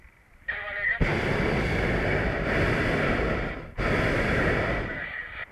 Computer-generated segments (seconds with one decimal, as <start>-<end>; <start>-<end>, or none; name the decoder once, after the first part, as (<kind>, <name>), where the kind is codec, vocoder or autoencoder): none